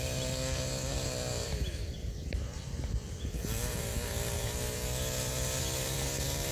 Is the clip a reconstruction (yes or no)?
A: no